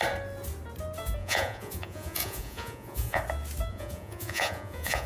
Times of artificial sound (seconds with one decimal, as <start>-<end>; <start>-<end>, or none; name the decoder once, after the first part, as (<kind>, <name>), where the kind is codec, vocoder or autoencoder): 1.2-3.2 (vocoder, Vocos); 3.7-5.1